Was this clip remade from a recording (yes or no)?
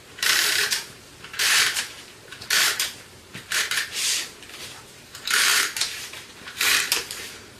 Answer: yes